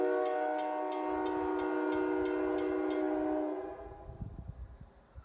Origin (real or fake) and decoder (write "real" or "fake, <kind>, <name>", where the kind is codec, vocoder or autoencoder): real